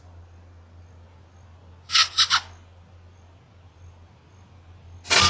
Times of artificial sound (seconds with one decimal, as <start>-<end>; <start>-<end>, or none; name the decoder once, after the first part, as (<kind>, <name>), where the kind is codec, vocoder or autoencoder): none